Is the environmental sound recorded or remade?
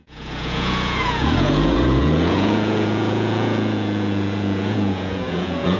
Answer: remade